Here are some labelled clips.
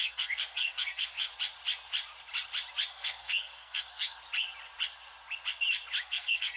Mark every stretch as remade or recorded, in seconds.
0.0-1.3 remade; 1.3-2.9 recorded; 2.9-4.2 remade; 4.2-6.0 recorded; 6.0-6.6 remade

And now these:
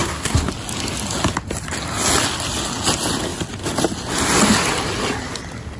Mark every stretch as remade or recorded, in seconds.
0.0-0.5 remade; 0.5-5.8 recorded

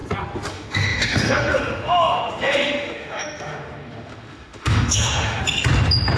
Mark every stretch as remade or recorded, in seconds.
0.0-0.5 recorded; 0.5-5.4 remade; 5.4-6.2 recorded

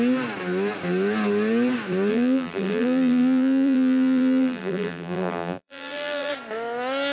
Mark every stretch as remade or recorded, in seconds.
0.0-2.1 recorded; 2.1-6.3 remade; 6.3-7.1 recorded

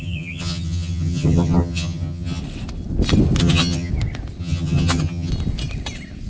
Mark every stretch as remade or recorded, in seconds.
0.0-2.4 remade; 2.4-3.4 recorded; 3.4-3.9 remade; 3.9-4.4 recorded; 4.4-5.3 remade; 5.3-6.3 recorded